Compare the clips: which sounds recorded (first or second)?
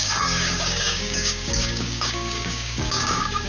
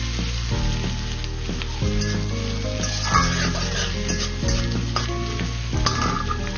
second